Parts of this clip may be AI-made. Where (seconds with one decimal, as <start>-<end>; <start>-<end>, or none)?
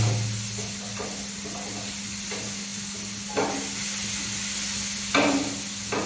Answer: none